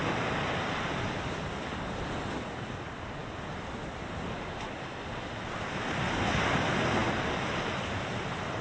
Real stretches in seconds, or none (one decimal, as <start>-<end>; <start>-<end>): 0.0-8.6

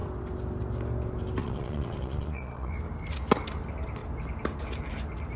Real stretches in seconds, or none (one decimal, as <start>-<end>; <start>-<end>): 0.0-1.4; 2.7-5.4

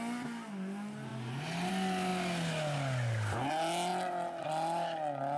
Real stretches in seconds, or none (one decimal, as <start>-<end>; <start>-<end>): 0.0-5.4

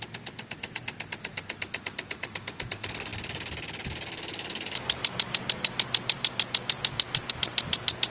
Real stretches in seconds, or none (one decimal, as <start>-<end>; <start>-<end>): 0.0-8.1

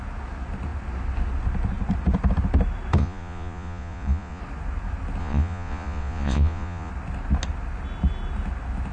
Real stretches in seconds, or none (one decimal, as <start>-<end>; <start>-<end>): 0.0-3.0; 4.4-5.2; 6.9-8.9

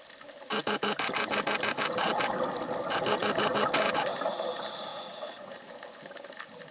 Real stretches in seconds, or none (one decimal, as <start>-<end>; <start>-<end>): 0.0-4.9; 5.7-6.7